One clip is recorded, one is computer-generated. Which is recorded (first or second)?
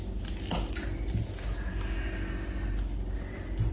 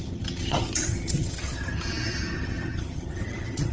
first